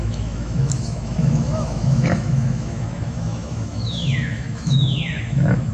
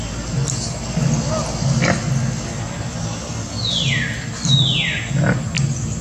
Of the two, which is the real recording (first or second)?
second